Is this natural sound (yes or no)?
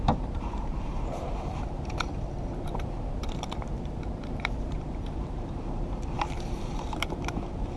no